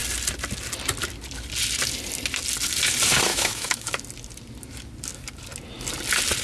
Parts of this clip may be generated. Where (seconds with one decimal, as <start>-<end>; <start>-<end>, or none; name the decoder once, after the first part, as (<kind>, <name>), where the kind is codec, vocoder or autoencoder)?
3.3-4.0 (autoencoder, DAC-VAE)